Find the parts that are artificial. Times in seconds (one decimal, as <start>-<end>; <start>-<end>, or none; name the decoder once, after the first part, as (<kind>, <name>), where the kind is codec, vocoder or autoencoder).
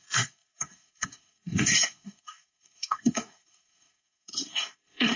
0.0-5.2 (codec, SNAC)